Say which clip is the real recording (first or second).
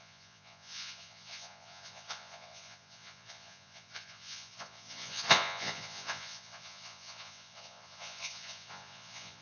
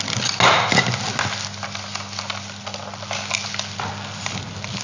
second